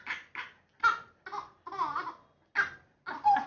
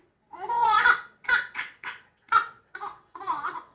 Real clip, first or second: first